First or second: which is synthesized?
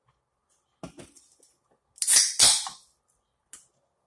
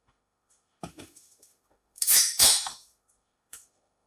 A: second